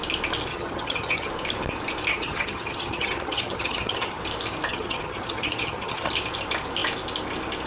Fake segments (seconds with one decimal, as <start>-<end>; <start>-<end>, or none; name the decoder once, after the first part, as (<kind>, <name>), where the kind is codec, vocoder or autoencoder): 0.5-1.3 (vocoder, HiFi-GAN); 2.1-4.2; 4.7-6.1